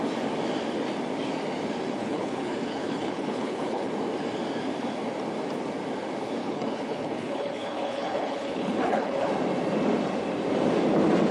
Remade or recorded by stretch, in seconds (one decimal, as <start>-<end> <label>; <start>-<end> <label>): 0.0-2.0 recorded; 2.0-3.9 remade; 3.9-6.4 recorded; 6.4-9.3 remade; 9.3-11.3 recorded